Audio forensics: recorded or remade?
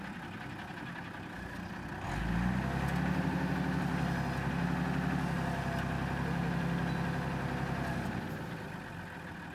recorded